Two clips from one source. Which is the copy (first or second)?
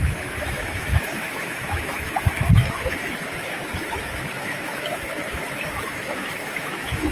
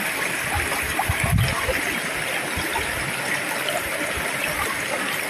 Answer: first